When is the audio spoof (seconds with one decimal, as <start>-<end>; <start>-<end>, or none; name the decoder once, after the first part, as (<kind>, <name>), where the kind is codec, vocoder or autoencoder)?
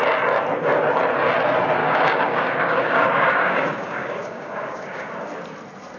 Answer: 1.8-5.1 (codec, DAC)